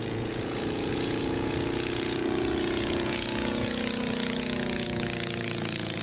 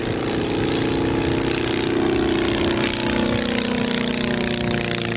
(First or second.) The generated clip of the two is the first